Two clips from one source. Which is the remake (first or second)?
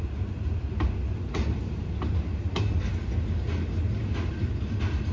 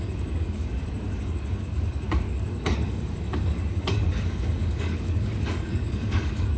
second